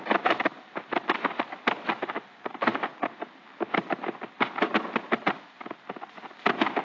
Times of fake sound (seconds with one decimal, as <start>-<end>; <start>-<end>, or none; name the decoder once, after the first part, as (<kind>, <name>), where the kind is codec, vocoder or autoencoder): none